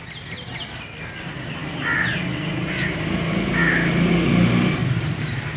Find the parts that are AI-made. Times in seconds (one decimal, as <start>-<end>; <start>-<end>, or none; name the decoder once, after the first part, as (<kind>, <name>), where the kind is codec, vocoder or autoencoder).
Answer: 4.8-5.6 (vocoder, BigVGAN v2)